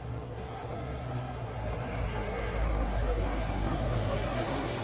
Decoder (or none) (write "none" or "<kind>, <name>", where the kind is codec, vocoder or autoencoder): codec, SNAC